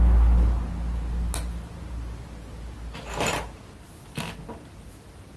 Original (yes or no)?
yes